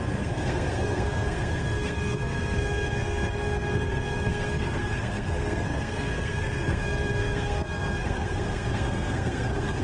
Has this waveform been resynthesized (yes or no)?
yes